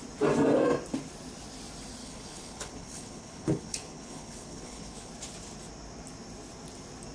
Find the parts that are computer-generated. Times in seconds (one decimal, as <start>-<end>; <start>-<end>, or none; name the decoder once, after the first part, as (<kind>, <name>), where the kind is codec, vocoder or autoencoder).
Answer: 2.0-5.1 (codec, HILCodec)